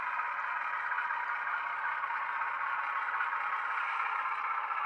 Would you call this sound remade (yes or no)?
no